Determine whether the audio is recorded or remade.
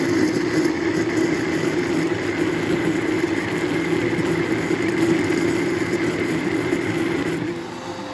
recorded